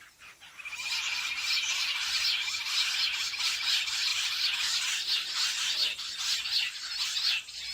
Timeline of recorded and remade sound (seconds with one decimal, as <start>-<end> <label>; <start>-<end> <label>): 0.0-7.7 recorded